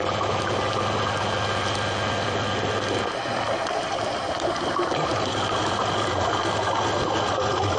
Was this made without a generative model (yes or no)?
yes